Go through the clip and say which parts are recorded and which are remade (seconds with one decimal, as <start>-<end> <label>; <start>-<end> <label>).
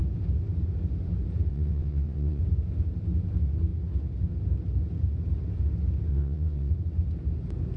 0.0-1.5 recorded; 1.5-2.4 remade; 2.4-6.1 recorded; 6.1-6.7 remade; 6.7-7.8 recorded